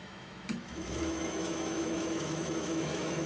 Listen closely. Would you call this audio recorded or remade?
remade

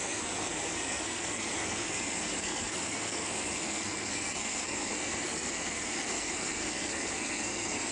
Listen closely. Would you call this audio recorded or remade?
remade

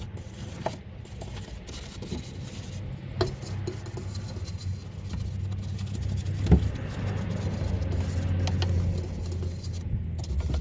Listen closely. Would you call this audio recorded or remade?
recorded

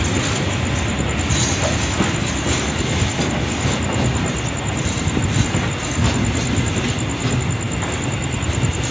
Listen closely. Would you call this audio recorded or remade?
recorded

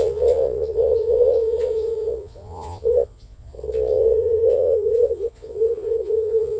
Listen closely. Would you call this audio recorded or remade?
remade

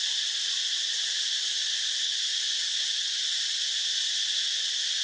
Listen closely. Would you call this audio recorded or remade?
recorded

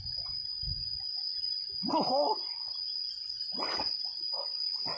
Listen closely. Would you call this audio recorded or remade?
recorded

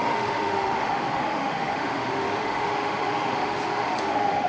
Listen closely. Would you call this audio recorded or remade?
remade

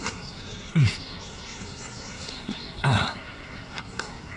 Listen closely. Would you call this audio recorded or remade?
remade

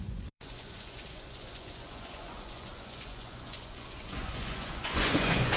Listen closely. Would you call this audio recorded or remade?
remade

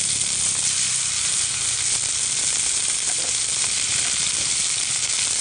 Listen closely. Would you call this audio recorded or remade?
remade